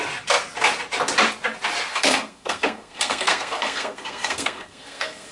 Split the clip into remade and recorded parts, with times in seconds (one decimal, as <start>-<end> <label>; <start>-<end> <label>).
0.0-1.9 recorded; 1.9-5.3 remade